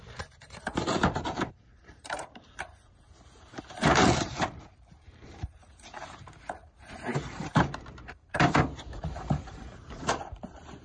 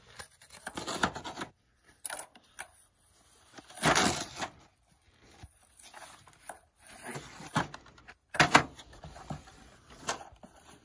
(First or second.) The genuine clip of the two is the second